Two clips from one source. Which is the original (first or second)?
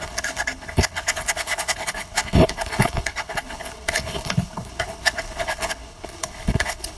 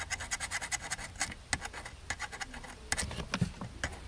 second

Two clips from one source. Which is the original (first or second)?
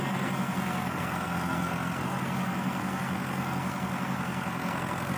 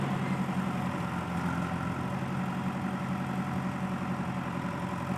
second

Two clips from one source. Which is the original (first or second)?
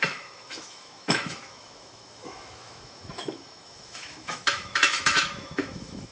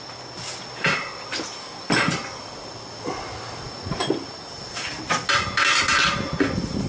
second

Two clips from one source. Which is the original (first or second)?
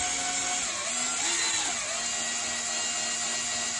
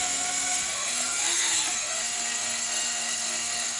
first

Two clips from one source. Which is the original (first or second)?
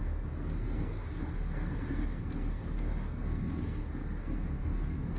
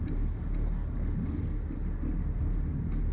second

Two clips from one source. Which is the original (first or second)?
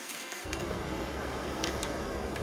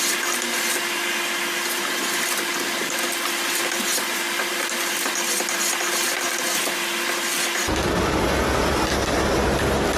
second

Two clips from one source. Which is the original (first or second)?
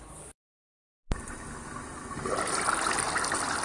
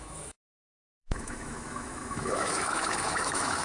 first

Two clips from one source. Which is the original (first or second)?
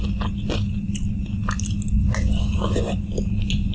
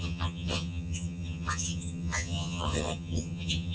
first